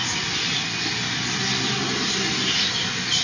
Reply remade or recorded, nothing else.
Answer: recorded